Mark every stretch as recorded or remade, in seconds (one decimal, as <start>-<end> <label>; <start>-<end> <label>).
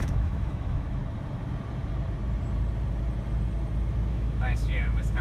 0.0-1.0 remade; 1.0-4.1 recorded; 4.1-5.2 remade